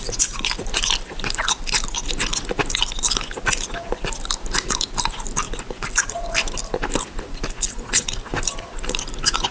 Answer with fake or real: real